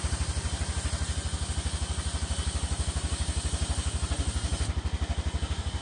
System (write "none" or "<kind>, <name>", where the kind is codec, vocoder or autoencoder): none